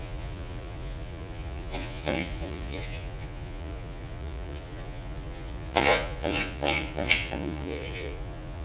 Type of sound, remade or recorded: remade